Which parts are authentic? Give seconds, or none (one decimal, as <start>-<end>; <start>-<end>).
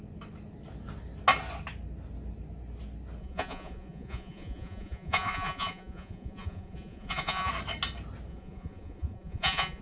0.0-3.2; 7.5-8.3